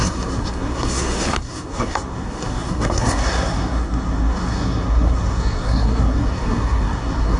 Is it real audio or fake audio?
fake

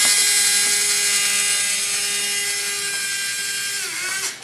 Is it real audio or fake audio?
real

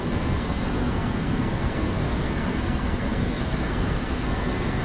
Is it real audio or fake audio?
fake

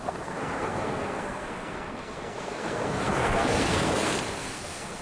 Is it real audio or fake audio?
fake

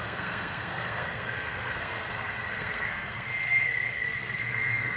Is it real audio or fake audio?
fake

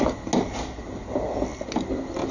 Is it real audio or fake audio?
real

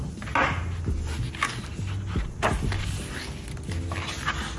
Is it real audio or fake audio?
real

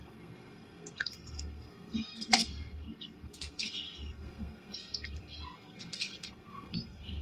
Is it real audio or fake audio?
fake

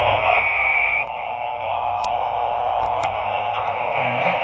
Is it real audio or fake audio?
fake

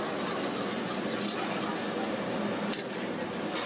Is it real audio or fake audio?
real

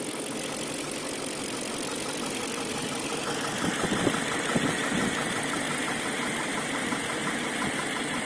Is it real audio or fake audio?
real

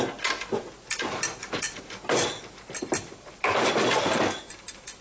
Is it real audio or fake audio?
real